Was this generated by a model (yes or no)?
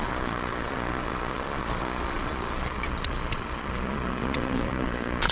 yes